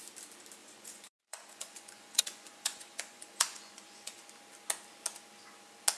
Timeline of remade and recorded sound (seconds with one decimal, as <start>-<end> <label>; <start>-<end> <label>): 0.0-0.6 recorded; 0.6-4.2 remade; 4.2-6.0 recorded